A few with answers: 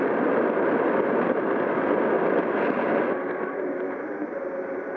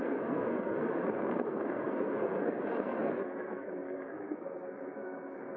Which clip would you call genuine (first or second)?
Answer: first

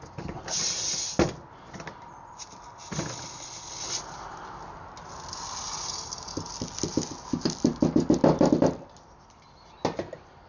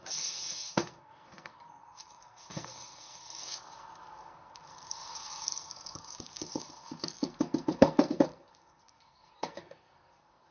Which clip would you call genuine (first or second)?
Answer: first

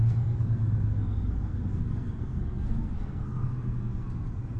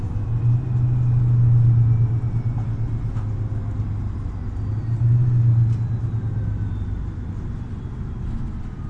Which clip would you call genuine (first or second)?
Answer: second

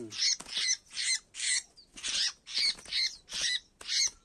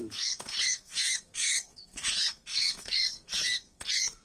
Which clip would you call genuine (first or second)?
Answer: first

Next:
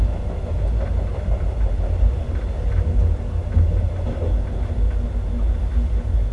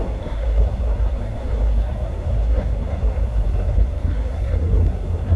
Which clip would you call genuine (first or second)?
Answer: first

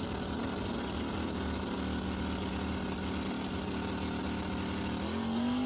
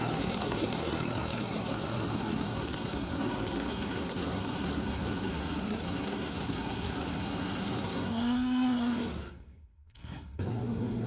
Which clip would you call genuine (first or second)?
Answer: first